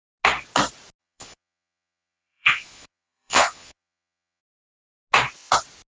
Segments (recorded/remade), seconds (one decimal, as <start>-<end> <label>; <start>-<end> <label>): 0.0-1.0 recorded; 1.0-4.4 remade; 4.4-5.9 recorded